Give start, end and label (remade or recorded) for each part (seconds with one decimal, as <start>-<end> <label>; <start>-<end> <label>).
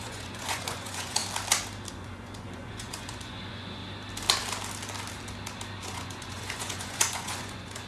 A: 0.0-1.2 remade; 1.2-1.9 recorded; 1.9-3.8 remade; 3.8-5.8 recorded; 5.8-7.9 remade